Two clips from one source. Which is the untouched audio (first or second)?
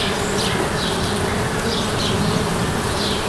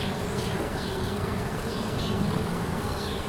first